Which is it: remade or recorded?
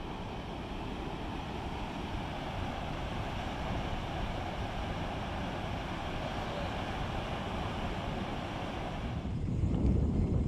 remade